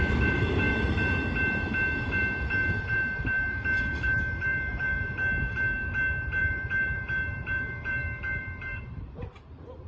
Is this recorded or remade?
remade